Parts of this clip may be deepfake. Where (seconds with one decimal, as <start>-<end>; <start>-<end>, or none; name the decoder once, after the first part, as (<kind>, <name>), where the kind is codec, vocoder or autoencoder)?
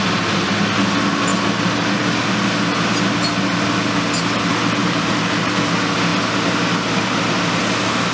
4.8-5.6 (vocoder, BigVGAN v2)